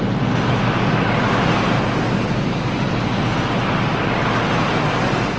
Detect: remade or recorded recorded